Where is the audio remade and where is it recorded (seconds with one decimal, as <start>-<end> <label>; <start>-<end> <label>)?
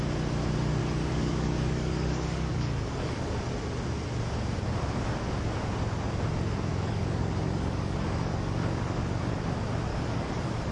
0.0-0.8 recorded; 0.8-3.4 remade; 3.4-6.7 recorded; 6.7-9.2 remade; 9.2-9.9 recorded; 9.9-10.7 remade